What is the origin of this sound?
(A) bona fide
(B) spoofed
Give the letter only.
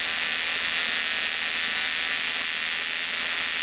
A